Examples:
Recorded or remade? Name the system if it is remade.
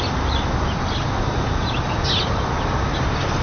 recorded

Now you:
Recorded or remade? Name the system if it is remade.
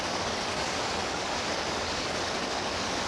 remade, codec, DAC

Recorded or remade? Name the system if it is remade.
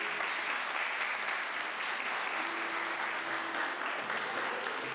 recorded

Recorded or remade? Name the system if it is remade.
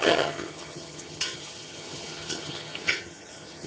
remade, vocoder, HiFi-GAN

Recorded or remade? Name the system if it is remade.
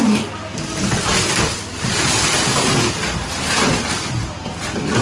recorded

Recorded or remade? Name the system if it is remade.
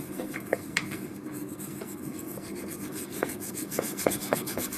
remade, codec, SNAC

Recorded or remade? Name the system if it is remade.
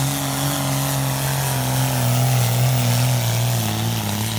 recorded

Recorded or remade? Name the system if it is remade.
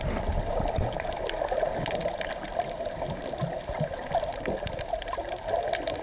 recorded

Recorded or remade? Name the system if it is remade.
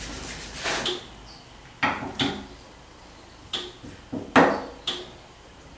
recorded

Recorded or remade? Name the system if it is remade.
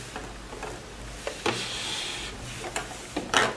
recorded